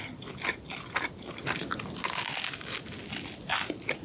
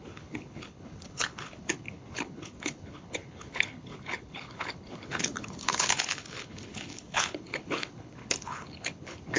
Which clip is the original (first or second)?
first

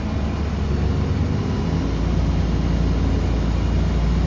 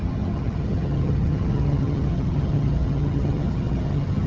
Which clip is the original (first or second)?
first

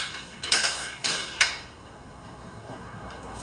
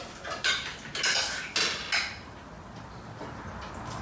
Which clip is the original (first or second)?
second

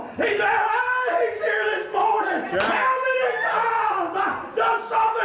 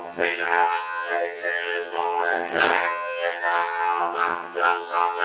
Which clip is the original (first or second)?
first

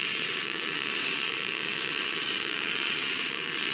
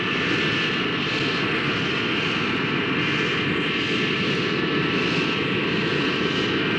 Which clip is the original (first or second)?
second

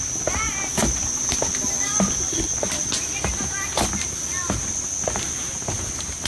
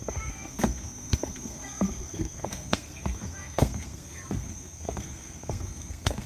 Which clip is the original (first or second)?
first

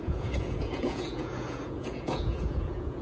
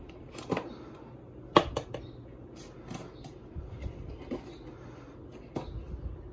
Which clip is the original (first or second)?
second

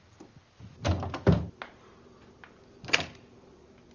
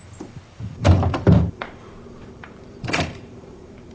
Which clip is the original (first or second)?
first